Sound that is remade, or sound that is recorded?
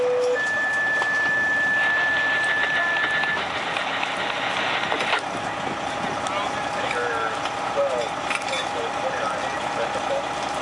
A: recorded